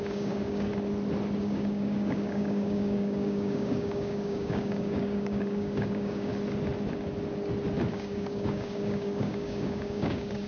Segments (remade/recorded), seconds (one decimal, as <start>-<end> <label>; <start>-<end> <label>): 0.0-0.7 remade; 0.7-1.4 recorded; 1.4-6.3 remade; 6.3-7.9 recorded; 7.9-10.5 remade